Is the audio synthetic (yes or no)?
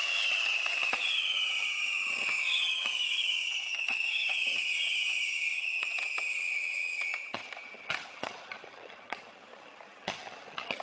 yes